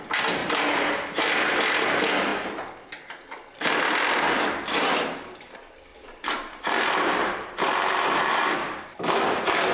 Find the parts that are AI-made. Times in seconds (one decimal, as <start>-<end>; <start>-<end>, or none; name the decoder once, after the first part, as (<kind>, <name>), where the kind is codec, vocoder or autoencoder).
0.4-1.2 (vocoder, BigVGAN v2); 5.9-8.4